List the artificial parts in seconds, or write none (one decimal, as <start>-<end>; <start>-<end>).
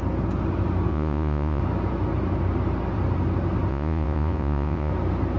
0.9-1.6; 3.7-4.9